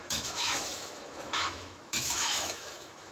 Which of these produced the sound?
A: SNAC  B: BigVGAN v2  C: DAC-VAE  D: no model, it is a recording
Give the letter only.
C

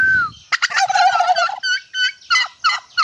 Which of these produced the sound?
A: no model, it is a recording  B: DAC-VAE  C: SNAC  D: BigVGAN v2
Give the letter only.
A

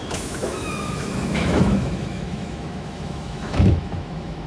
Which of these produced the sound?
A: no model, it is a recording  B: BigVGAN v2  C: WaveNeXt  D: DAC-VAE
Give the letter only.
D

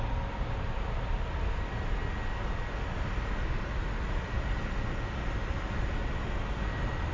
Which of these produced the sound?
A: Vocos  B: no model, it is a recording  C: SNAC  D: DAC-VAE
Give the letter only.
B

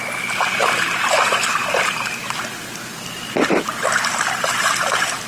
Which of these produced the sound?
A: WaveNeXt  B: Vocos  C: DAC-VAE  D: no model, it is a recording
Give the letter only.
D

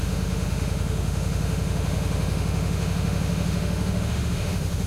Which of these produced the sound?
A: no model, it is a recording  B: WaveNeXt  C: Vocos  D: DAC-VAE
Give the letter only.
D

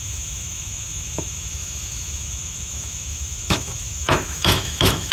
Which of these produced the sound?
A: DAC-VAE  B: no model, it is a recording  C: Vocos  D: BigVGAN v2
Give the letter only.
A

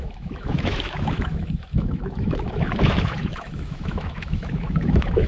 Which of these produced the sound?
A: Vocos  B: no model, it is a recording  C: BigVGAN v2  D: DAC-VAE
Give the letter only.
D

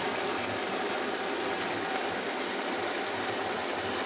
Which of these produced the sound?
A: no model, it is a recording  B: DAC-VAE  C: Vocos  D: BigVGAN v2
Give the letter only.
A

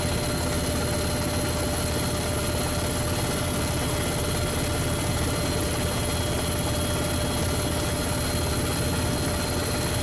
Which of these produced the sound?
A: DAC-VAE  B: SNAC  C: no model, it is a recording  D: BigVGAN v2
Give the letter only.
C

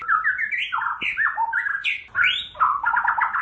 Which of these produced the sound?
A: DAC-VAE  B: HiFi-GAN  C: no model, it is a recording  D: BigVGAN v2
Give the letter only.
C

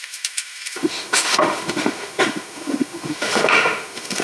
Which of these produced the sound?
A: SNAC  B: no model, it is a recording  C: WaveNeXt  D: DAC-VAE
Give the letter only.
D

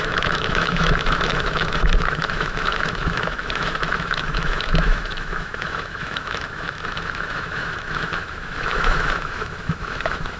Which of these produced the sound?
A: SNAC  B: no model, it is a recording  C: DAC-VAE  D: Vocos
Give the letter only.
C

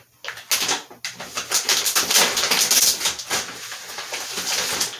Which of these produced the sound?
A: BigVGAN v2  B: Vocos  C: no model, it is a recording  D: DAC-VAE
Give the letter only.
C